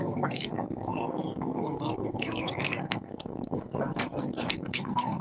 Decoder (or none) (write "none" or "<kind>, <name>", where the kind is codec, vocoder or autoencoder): codec, SNAC